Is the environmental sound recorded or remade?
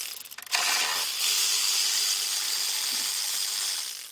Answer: recorded